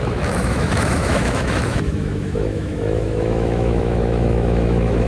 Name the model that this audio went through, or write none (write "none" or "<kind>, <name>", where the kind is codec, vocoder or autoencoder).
autoencoder, DAC-VAE